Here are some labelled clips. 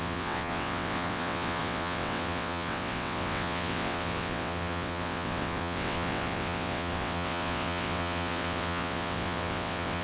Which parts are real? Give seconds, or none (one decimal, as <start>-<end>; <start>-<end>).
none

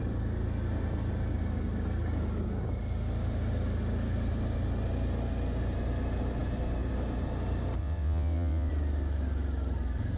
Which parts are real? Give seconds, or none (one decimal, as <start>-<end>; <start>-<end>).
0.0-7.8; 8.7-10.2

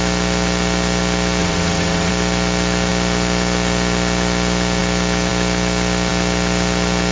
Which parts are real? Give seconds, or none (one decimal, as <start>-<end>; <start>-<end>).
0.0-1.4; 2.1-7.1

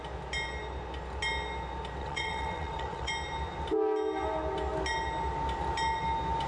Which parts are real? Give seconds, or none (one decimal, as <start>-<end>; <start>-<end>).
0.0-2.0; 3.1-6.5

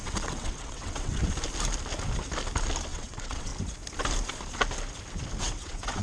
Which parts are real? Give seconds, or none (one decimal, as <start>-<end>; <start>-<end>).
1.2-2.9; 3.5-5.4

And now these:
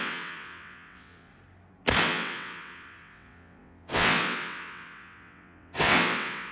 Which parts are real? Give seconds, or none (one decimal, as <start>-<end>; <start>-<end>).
1.3-2.0

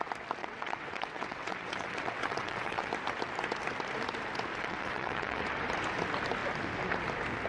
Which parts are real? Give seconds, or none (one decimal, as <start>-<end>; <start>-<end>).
0.0-0.4; 2.9-4.5; 5.4-7.5

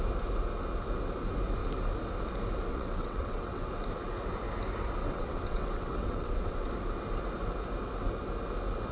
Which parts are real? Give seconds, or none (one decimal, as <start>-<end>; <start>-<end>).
0.0-2.7; 3.7-5.0; 6.7-8.9